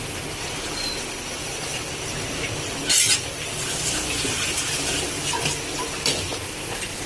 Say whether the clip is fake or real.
real